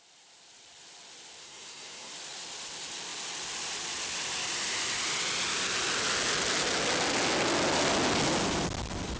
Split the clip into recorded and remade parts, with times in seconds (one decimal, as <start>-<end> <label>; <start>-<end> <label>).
0.0-1.4 recorded; 1.4-2.1 remade; 2.1-9.2 recorded